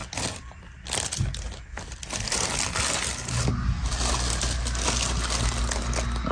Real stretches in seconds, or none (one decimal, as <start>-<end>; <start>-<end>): 0.0-6.3

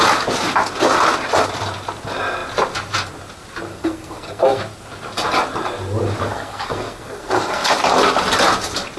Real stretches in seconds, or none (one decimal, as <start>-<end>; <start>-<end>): 0.0-3.7; 4.6-6.2; 7.7-9.0

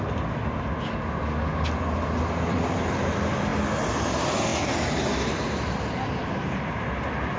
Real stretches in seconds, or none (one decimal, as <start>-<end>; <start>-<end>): 0.0-7.4

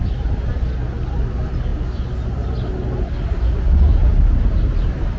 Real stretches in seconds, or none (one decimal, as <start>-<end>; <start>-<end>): 0.0-5.2

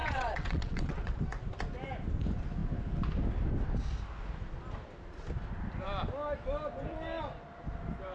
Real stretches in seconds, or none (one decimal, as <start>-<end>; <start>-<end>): 1.2-8.1